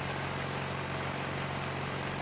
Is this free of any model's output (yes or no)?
yes